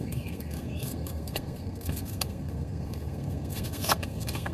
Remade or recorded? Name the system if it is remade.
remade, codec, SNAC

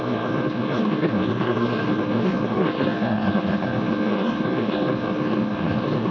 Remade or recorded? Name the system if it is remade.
remade, codec, SNAC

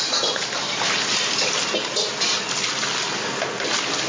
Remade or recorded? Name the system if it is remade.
recorded